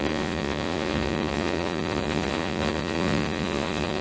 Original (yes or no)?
no